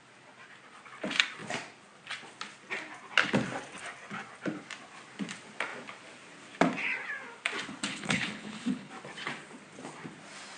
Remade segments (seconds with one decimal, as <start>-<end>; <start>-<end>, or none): 7.9-8.9